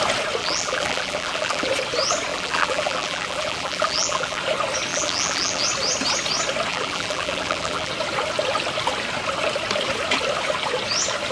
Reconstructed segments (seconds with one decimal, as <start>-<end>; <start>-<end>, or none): 0.4-1.7; 2.3-4.4; 4.9-5.6; 6.7-7.9